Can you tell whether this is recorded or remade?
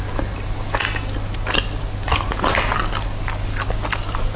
recorded